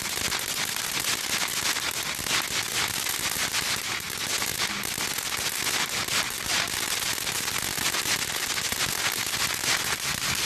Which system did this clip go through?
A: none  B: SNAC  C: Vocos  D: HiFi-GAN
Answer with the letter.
A